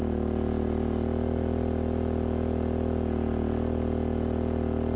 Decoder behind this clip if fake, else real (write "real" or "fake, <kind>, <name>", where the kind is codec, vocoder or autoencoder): real